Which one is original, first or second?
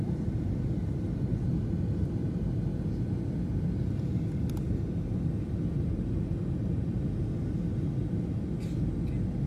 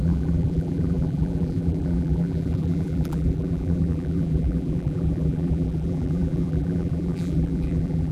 first